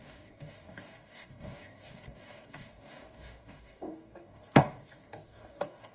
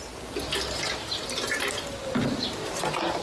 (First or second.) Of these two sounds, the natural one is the second